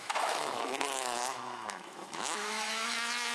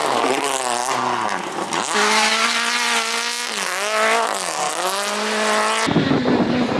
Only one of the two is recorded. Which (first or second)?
second